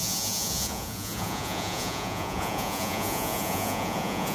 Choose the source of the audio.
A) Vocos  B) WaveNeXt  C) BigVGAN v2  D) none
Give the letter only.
A